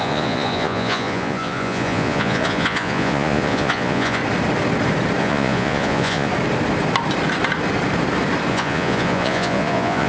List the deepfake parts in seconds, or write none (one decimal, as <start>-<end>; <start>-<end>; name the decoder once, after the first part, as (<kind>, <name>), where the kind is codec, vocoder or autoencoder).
0.0-4.2 (vocoder, Vocos); 5.2-6.3; 8.5-10.1